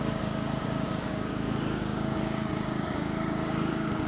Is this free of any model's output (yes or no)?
no